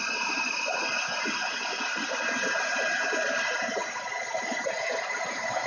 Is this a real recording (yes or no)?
no